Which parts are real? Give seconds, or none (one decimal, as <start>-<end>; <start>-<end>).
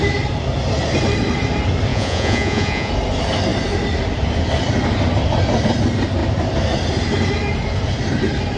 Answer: 0.0-1.9; 2.9-8.6